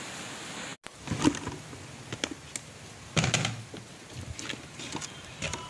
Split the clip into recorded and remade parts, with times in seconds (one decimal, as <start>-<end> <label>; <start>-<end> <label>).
0.0-5.7 recorded